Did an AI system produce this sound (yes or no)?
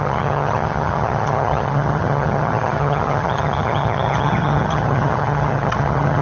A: yes